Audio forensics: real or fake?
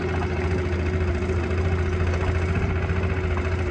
real